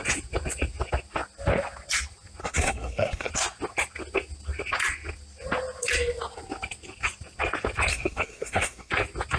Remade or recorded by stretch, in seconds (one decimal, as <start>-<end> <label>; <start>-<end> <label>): 0.0-2.4 recorded; 2.4-3.3 remade; 3.3-7.9 recorded; 7.9-8.9 remade; 8.9-9.4 recorded